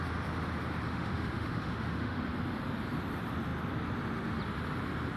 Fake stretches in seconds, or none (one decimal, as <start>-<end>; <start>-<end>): 0.9-2.2